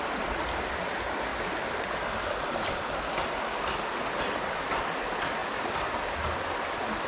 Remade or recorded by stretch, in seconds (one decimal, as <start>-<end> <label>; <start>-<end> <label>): 0.0-7.1 recorded